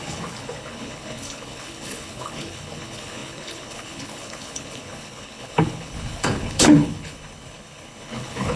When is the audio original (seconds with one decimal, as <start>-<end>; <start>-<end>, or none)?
none